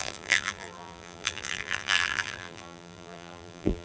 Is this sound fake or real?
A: fake